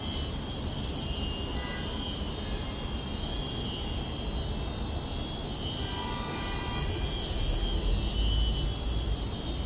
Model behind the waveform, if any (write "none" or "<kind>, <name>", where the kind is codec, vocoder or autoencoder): none